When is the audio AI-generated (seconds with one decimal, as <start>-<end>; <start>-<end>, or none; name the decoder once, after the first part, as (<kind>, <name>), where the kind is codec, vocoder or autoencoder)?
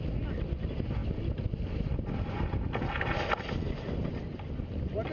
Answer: none